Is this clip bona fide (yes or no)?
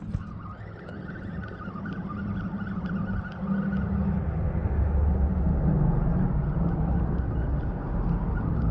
yes